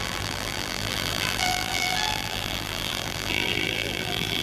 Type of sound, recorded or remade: remade